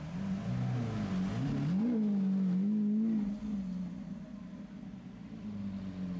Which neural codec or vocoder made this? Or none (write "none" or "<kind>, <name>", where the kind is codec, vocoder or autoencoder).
none